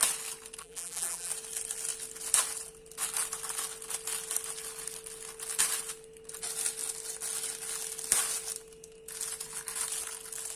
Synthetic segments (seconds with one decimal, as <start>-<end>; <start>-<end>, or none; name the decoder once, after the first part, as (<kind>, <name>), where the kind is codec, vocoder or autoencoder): 0.6-1.3 (vocoder, BigVGAN v2)

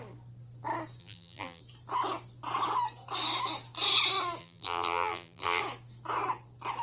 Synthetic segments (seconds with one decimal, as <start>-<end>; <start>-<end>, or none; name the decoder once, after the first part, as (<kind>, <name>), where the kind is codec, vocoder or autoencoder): 1.0-1.6 (vocoder, BigVGAN v2); 4.4-5.6

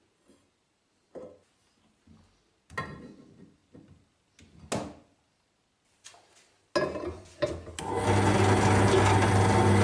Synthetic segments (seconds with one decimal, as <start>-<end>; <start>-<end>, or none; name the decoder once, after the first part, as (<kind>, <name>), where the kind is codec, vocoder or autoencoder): none

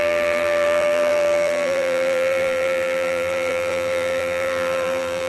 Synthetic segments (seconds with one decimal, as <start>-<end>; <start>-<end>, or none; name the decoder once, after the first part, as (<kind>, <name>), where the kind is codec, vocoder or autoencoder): 0.0-5.3 (vocoder, BigVGAN v2)

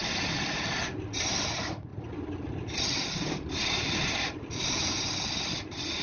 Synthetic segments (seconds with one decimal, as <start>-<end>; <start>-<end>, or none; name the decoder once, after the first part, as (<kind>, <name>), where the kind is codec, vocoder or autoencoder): none

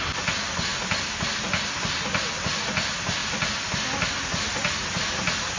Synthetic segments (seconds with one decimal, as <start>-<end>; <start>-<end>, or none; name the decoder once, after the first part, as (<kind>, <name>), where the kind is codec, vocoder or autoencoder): none

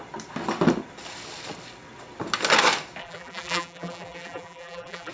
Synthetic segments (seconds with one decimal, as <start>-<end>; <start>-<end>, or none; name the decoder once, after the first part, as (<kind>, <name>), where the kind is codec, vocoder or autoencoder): 3.0-5.1 (vocoder, BigVGAN v2)